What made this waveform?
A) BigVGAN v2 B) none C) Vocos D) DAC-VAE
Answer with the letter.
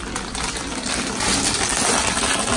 B